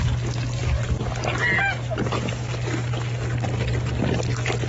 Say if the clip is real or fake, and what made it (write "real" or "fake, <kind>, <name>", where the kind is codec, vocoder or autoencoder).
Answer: real